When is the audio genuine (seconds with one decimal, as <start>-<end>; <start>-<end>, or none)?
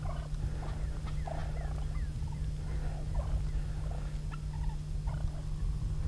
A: 0.0-6.1